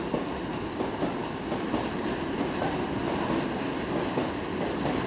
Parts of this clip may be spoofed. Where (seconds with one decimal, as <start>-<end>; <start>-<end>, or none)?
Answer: none